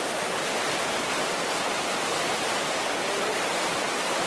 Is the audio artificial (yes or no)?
no